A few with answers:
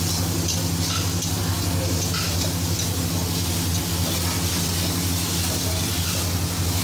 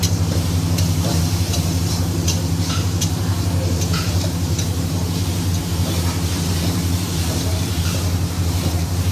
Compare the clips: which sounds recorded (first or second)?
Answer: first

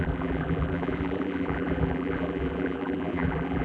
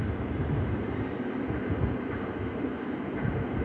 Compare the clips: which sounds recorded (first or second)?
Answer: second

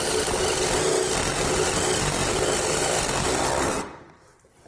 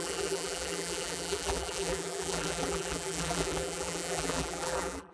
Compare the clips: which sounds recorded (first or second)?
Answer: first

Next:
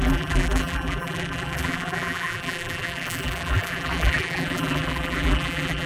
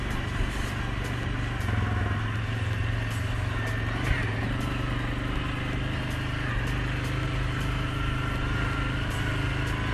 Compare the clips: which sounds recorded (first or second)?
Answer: second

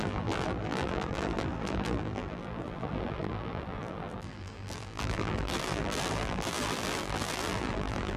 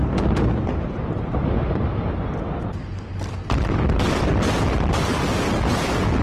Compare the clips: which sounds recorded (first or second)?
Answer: second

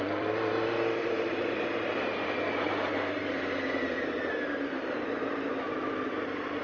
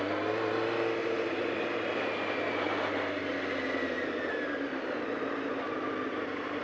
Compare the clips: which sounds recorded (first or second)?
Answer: second